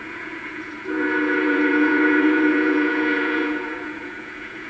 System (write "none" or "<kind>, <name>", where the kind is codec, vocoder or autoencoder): vocoder, Vocos